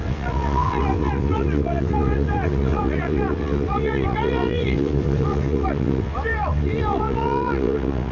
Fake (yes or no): yes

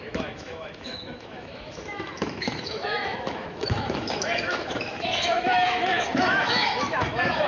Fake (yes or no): yes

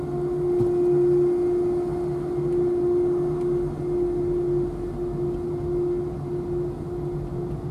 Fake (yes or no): no